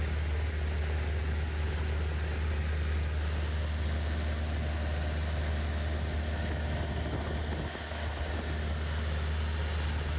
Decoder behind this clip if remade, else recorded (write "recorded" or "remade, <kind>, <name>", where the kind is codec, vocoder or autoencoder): recorded